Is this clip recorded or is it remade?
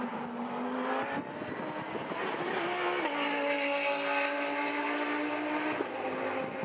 recorded